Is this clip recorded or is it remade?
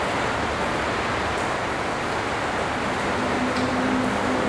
recorded